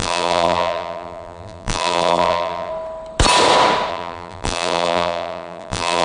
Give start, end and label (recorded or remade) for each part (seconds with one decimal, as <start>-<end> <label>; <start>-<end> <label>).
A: 0.0-2.7 remade; 2.7-3.9 recorded; 3.9-6.0 remade